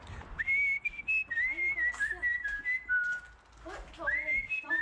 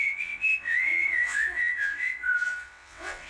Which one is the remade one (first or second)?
second